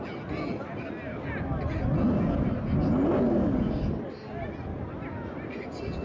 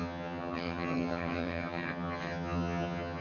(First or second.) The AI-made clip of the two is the second